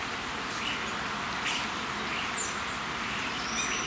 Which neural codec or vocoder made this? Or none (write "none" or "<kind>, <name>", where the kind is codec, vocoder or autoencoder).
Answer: none